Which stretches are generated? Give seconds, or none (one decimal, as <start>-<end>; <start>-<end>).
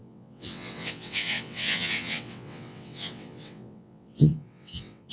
0.0-5.1